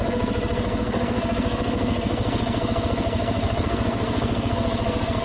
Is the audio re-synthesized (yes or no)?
yes